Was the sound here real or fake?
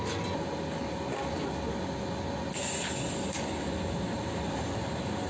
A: real